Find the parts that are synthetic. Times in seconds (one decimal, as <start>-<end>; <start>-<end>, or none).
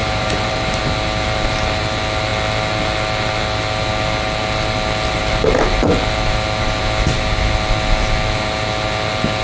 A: 0.0-0.8